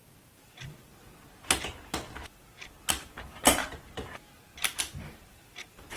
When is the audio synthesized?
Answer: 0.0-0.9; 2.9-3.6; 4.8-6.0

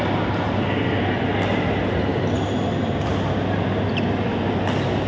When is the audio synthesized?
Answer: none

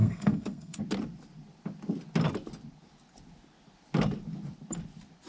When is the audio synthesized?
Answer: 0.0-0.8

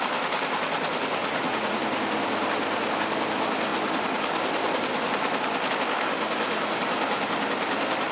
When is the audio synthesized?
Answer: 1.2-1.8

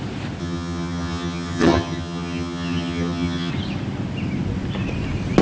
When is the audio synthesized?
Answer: 0.4-3.5